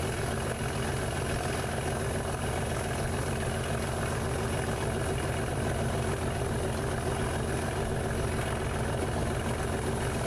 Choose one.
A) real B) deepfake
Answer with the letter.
A